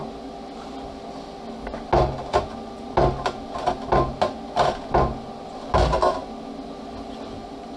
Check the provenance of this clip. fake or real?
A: real